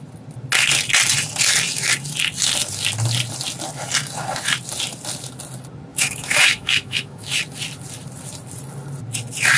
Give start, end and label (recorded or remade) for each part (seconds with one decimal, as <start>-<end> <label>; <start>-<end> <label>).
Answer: 0.0-5.9 recorded; 5.9-7.4 remade; 7.4-9.6 recorded

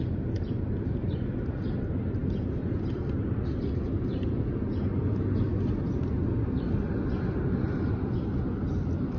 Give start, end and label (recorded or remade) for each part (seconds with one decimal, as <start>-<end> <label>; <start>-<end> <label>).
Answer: 0.0-9.2 recorded

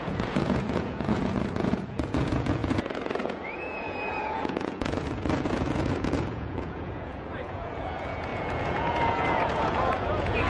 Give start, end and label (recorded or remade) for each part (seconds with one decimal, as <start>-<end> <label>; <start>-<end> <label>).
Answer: 0.0-10.5 remade

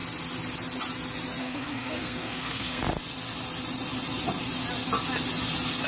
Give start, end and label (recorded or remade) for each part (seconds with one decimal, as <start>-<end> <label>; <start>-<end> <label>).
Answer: 0.0-1.4 recorded; 1.4-2.8 remade; 2.8-5.9 recorded

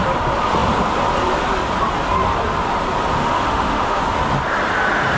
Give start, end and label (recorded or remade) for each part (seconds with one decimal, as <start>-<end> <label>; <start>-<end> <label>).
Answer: 0.0-3.2 recorded; 3.2-4.0 remade; 4.0-5.2 recorded

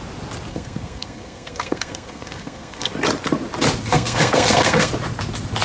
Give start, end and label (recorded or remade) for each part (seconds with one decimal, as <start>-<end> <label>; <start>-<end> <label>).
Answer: 0.0-0.5 recorded; 0.5-2.9 remade; 2.9-3.9 recorded; 3.9-4.9 remade; 4.9-5.6 recorded